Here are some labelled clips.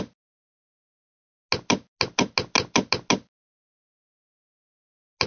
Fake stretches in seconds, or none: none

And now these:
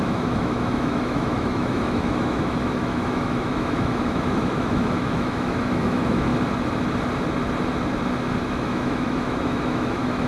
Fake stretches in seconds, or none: 0.0-6.3 (autoencoder, DAC-VAE); 8.5-10.3

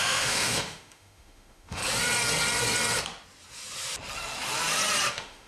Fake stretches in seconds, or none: 0.0-1.8 (autoencoder, DAC-VAE); 5.1-5.5

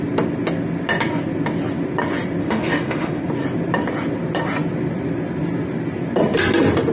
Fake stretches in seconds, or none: 2.4-3.2 (autoencoder, DAC-VAE)

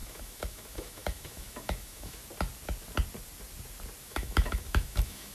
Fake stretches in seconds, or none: 0.0-2.2 (autoencoder, DAC-VAE); 4.0-5.3

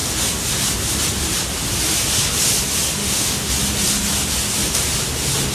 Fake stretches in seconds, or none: 3.0-3.5 (autoencoder, DAC-VAE)

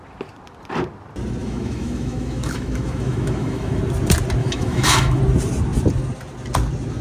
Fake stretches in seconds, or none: 1.4-3.8 (autoencoder, DAC-VAE); 4.4-5.2

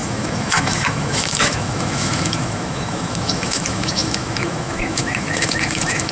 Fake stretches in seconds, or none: 0.0-6.1 (autoencoder, DAC-VAE)